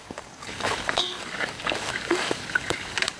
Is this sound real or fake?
fake